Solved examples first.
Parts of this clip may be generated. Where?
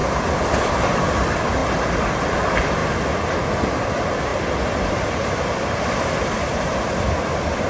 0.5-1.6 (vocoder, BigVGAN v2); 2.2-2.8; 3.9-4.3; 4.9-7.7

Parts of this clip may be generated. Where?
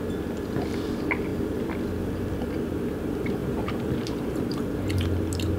3.4-4.6 (vocoder, BigVGAN v2)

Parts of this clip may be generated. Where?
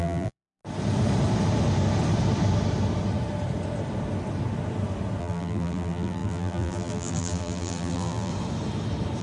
0.0-0.6 (vocoder, BigVGAN v2); 5.2-8.3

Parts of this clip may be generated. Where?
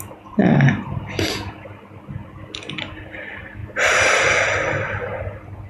0.4-1.1 (vocoder, BigVGAN v2); 3.6-5.2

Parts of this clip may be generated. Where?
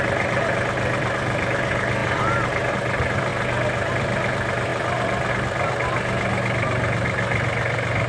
0.0-3.3 (vocoder, BigVGAN v2); 3.9-8.1